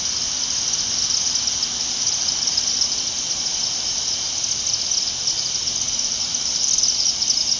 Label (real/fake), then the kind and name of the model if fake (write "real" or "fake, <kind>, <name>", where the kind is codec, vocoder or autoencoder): real